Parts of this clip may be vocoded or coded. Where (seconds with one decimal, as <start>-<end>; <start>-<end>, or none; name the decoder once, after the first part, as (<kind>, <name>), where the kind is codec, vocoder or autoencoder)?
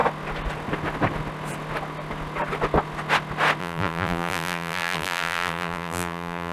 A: 3.6-6.5 (vocoder, BigVGAN v2)